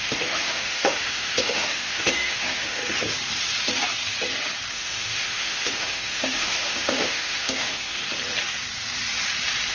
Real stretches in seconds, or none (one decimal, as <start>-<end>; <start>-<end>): 2.8-4.7; 8.0-9.7